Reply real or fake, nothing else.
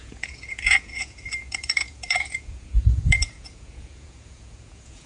fake